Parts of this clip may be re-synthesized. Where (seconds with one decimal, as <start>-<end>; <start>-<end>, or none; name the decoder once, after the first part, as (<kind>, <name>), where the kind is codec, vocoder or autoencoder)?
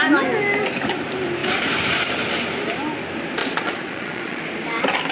3.4-4.4 (vocoder, Vocos)